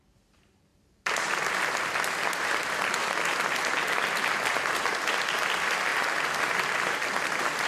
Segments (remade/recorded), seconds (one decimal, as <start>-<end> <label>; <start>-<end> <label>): 0.0-7.7 recorded